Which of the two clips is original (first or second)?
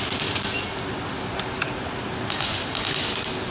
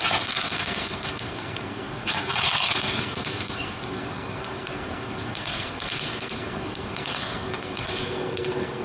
first